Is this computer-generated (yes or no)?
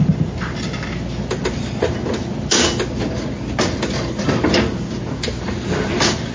no